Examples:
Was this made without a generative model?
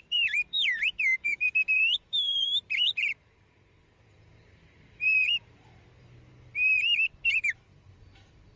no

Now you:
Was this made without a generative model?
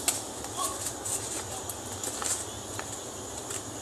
yes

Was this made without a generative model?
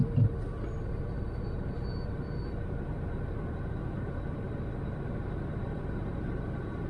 no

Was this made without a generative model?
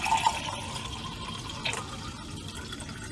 yes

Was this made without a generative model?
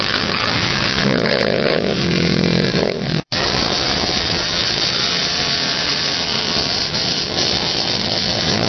no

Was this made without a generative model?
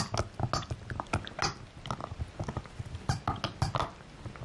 yes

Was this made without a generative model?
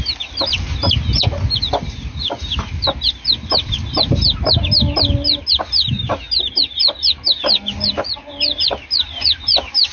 yes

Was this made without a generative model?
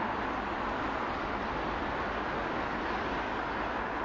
yes